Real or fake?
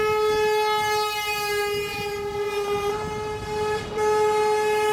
real